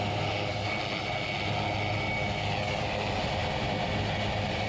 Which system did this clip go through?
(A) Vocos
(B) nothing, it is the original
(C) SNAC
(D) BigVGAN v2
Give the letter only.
B